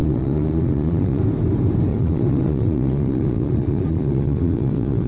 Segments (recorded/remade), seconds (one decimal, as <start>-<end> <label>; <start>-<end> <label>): 0.0-1.2 remade; 1.2-1.9 recorded; 1.9-5.1 remade